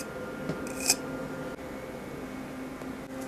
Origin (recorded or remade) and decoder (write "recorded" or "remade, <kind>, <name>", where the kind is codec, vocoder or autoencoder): recorded